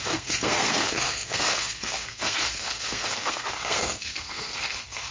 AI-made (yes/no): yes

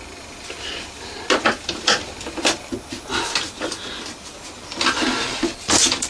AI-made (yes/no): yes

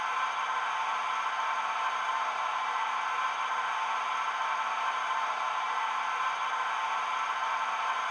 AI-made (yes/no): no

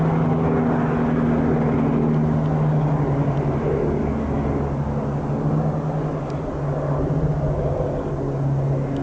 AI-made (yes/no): no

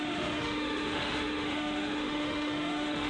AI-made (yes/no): yes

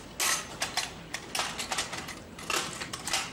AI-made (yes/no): no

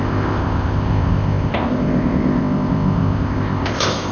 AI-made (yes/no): yes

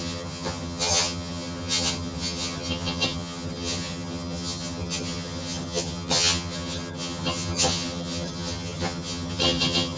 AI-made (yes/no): yes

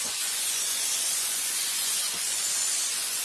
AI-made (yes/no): yes